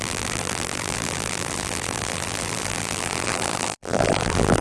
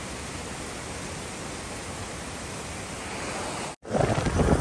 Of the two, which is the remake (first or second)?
first